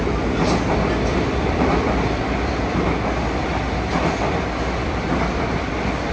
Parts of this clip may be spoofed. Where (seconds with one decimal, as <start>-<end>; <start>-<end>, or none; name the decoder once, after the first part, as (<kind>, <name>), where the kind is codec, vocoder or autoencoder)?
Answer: 0.7-2.2 (vocoder, BigVGAN v2)